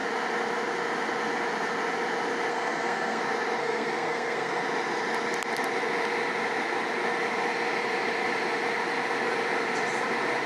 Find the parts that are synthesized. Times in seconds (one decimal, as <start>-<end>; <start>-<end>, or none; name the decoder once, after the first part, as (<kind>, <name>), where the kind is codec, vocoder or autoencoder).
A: 2.5-3.2 (codec, SNAC); 3.6-4.6